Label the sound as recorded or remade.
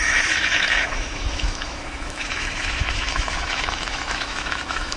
remade